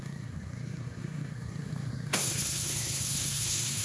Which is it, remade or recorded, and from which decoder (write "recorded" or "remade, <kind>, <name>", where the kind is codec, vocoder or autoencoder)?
remade, codec, SNAC